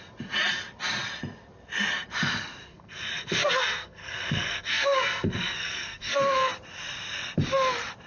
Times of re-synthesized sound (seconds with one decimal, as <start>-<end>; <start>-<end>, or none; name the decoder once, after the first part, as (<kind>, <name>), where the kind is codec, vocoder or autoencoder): 2.6-6.5 (codec, SNAC)